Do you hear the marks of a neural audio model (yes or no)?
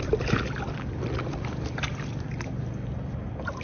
no